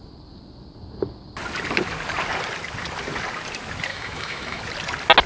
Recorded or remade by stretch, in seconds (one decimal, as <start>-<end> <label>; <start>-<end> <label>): 0.0-3.9 recorded; 3.9-4.6 remade; 4.6-5.3 recorded